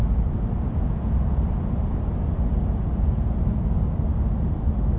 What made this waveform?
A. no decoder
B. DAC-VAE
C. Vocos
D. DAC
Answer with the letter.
A